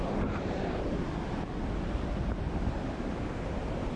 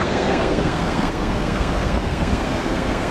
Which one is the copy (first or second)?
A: second